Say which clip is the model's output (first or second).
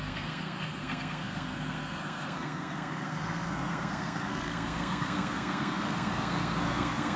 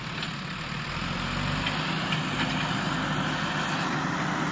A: first